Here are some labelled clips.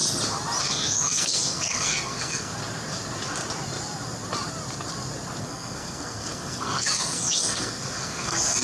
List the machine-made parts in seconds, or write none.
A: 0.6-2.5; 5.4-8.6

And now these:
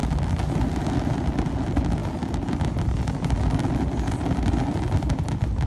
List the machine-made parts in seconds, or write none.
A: none

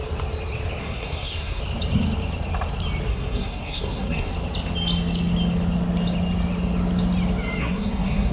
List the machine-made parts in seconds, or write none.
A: 0.8-1.6; 3.1-4.3; 7.6-8.3

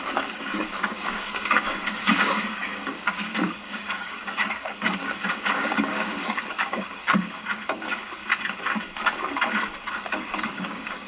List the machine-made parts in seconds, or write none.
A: 0.0-8.2; 9.9-11.1

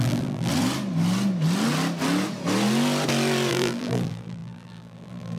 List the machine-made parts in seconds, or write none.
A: 0.0-0.5; 3.5-5.4

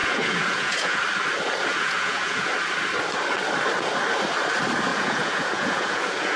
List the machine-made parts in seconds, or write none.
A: 0.0-1.0; 1.7-2.5; 4.9-6.4